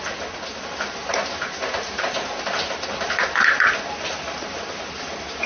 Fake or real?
real